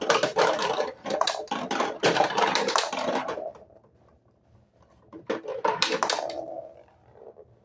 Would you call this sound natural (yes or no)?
no